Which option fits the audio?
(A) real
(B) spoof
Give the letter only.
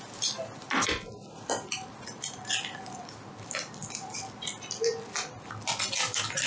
A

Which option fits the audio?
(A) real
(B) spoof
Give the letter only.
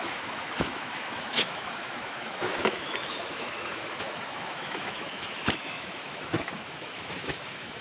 B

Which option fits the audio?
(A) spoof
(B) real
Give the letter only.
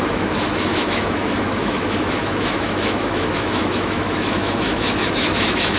A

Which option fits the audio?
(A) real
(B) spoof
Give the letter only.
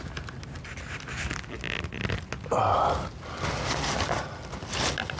A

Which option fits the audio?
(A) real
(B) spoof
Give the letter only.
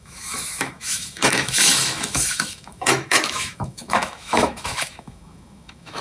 B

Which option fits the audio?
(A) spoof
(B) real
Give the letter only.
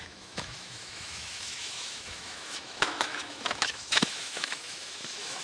A